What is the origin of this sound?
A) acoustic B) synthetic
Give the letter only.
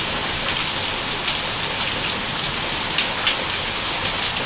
A